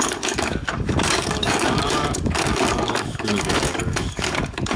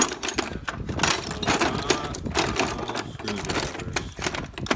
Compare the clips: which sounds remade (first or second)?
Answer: first